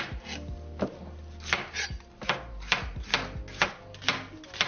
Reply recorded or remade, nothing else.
recorded